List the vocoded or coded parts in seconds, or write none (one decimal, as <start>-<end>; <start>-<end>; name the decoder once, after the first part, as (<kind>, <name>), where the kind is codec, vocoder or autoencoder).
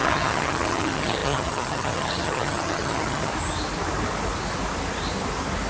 0.0-3.3 (vocoder, HiFi-GAN)